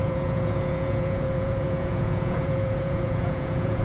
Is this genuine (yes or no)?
no